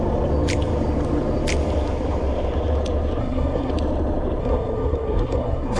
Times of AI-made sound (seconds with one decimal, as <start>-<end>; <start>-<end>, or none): 3.2-3.7; 4.4-5.8